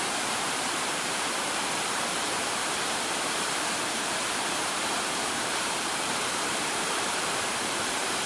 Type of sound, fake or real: fake